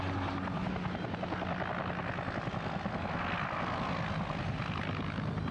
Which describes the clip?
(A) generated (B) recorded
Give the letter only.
B